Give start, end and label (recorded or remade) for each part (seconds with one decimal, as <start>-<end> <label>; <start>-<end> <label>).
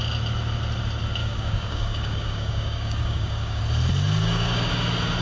0.0-1.2 recorded; 1.2-3.6 remade; 3.6-4.2 recorded; 4.2-4.7 remade; 4.7-5.2 recorded